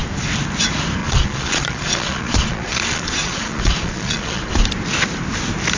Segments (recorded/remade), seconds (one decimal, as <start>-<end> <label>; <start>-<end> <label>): 0.0-1.0 recorded; 1.0-4.5 remade; 4.5-5.8 recorded